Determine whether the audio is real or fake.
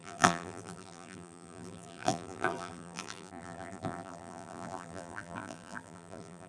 fake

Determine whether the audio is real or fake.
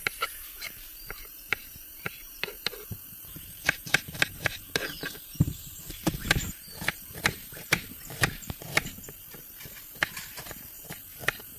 fake